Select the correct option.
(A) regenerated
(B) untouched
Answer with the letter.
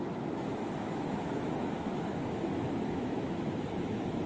A